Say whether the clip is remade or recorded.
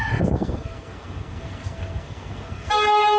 remade